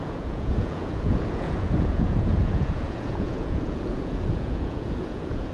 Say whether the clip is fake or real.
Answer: fake